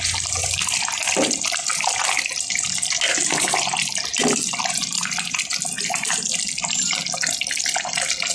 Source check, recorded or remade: recorded